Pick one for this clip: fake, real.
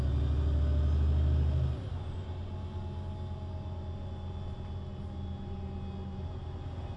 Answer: real